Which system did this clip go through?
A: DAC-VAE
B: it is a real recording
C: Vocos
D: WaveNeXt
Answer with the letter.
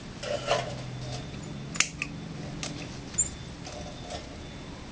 B